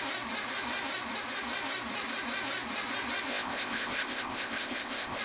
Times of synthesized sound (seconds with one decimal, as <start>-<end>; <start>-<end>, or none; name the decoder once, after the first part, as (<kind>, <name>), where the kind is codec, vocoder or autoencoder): 3.3-5.2 (codec, ZipCodec)